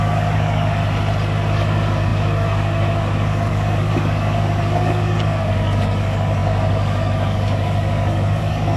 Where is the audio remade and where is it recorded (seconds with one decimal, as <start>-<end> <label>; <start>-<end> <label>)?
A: 0.0-0.8 remade; 0.8-1.5 recorded; 1.5-8.8 remade